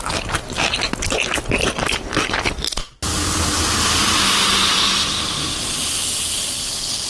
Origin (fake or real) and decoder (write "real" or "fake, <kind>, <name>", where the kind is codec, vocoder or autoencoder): real